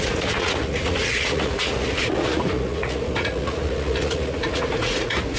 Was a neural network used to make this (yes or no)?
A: yes